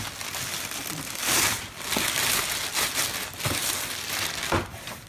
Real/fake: real